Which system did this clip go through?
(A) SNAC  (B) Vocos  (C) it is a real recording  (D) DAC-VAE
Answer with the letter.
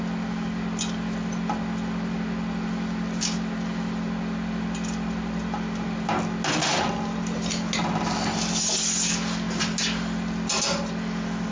C